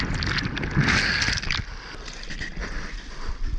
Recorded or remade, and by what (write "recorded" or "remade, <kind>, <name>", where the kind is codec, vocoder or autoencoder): recorded